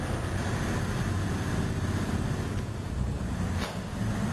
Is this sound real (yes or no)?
yes